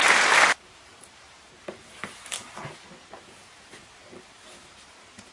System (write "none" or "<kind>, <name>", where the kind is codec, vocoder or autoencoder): vocoder, BigVGAN v2